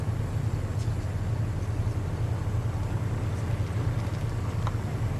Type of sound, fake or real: real